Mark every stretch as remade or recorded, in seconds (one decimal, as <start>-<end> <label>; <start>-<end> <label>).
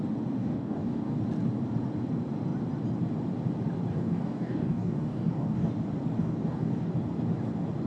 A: 0.0-0.4 recorded; 0.4-1.2 remade; 1.2-3.9 recorded; 3.9-5.7 remade; 5.7-6.2 recorded; 6.2-6.9 remade; 6.9-7.9 recorded